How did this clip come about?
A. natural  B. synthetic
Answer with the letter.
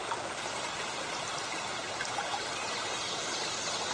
A